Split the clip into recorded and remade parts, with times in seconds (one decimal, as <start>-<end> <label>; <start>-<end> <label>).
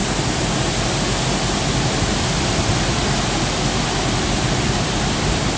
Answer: 0.0-5.6 recorded